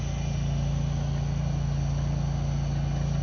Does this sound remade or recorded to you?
recorded